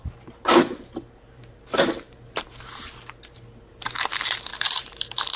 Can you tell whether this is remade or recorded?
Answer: remade